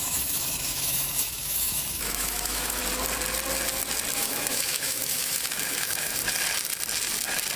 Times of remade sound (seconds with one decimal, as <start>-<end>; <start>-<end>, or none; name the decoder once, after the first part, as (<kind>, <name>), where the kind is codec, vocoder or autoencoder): 0.0-2.8 (autoencoder, DAC-VAE); 4.1-6.2